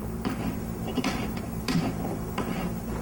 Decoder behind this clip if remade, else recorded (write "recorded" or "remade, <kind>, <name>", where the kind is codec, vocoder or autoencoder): remade, vocoder, BigVGAN v2